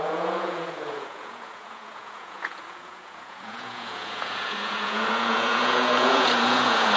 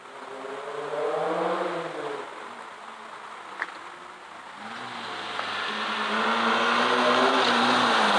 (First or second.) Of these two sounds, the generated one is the first